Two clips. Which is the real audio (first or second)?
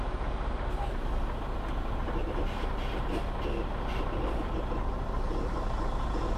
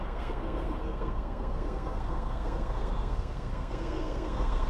first